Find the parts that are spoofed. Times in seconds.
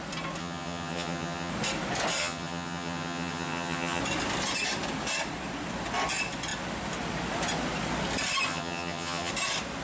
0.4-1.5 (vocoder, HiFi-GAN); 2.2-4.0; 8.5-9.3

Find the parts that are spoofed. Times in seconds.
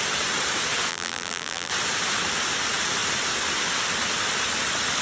0.9-1.7 (vocoder, BigVGAN v2)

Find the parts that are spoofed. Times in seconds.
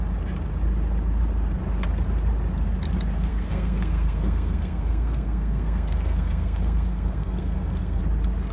3.3-8.0 (codec, SNAC)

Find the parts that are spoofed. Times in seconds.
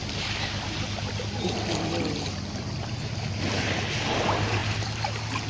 none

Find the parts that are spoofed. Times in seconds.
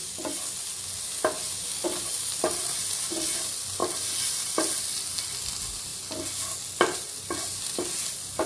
none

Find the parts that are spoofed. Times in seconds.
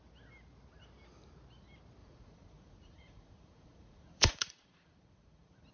2.0-5.7 (vocoder, Vocos)